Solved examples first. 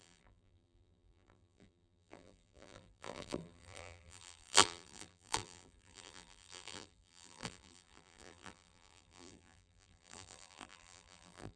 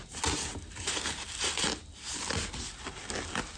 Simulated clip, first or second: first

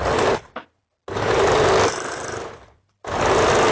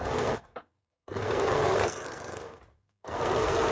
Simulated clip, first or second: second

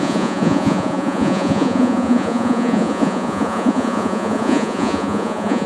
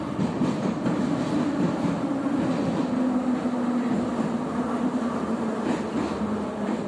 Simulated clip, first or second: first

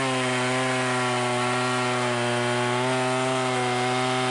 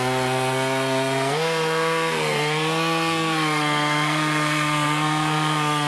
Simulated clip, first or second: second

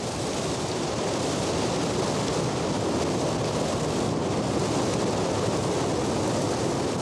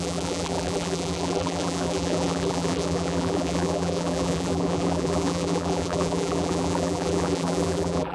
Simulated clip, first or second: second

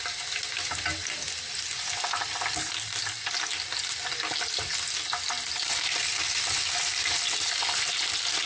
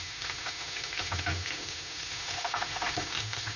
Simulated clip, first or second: second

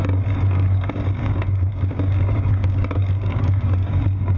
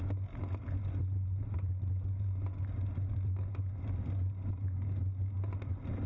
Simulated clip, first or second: first